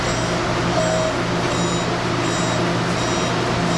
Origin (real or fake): real